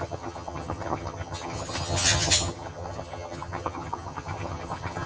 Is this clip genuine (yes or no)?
no